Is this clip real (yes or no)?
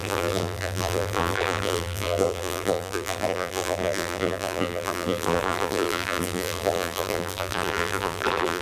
no